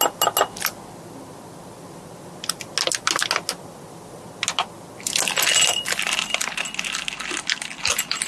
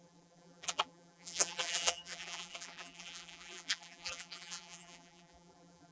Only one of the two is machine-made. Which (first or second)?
second